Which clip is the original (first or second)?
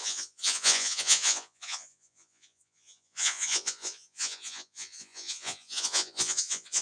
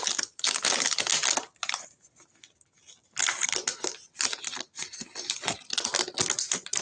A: second